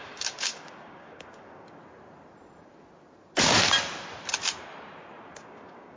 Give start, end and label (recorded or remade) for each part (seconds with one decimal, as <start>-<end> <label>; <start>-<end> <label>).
0.0-1.8 remade; 1.8-5.4 recorded; 5.4-6.0 remade

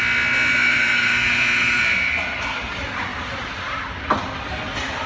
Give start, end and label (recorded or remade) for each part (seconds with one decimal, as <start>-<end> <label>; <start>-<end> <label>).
0.0-0.5 recorded; 0.5-1.8 remade; 1.8-5.1 recorded